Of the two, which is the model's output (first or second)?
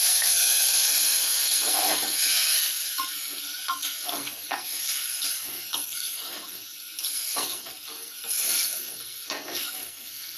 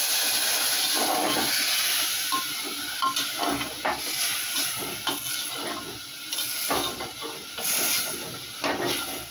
first